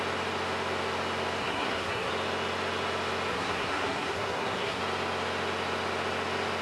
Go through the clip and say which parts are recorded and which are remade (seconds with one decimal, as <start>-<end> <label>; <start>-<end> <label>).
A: 0.0-1.4 recorded; 1.4-2.1 remade; 2.1-3.3 recorded; 3.3-4.8 remade; 4.8-6.6 recorded